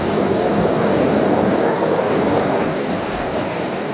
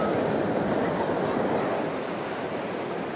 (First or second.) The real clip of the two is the second